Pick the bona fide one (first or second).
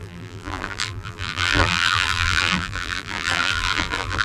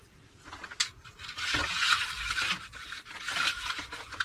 second